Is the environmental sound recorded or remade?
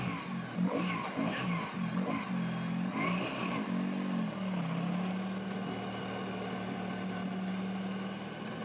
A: recorded